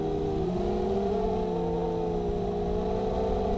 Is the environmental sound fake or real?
real